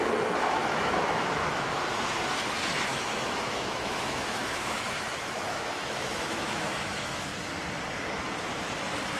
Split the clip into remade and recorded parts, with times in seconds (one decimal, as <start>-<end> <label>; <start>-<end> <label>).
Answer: 0.0-0.6 recorded; 0.6-1.8 remade; 1.8-2.9 recorded; 2.9-7.3 remade; 7.3-9.2 recorded